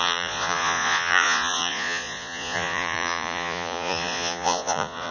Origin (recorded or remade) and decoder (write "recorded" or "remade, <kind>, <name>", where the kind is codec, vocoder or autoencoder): remade, vocoder, Vocos